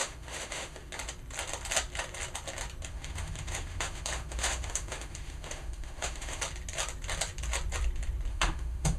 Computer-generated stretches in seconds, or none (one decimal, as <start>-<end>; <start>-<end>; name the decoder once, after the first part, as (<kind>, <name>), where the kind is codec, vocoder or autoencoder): 0.0-0.9 (autoencoder, DAC-VAE); 2.9-6.4; 8.3-9.0